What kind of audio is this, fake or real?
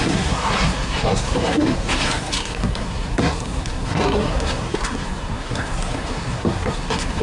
fake